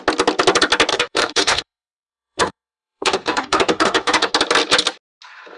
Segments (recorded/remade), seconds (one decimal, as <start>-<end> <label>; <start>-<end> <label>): 0.0-0.9 recorded; 0.9-4.3 remade; 4.3-5.6 recorded